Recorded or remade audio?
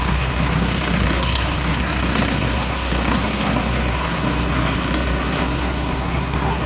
remade